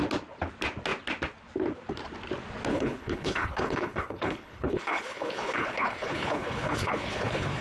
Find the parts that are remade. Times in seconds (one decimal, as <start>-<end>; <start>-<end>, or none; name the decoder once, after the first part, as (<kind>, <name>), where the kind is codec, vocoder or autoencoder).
2.7-7.6 (codec, HILCodec)